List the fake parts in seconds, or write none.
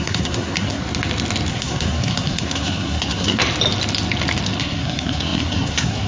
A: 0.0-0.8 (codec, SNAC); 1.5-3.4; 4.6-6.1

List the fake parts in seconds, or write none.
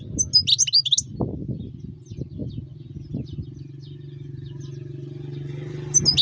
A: none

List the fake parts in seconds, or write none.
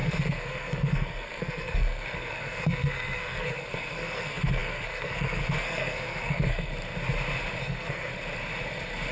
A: 0.0-6.7 (codec, SNAC); 7.6-8.1